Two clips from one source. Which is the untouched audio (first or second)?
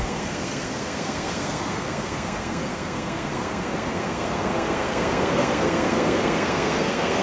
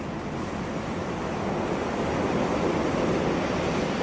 second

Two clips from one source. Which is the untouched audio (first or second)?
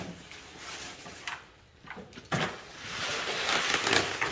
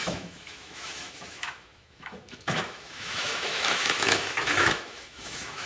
first